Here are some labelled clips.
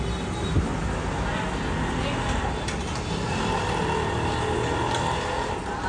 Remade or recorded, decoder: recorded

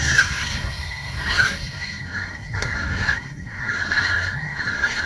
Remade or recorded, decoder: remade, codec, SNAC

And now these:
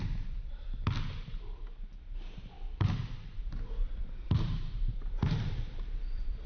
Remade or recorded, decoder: remade, vocoder, BigVGAN v2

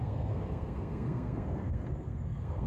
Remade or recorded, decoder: remade, codec, SNAC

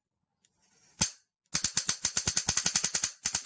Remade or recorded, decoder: recorded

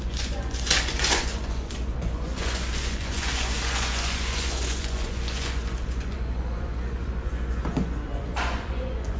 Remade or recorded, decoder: remade, vocoder, Vocos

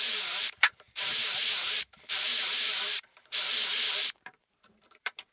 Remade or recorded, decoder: remade, vocoder, BigVGAN v2